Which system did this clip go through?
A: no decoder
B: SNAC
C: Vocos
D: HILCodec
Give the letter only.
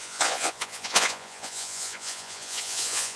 C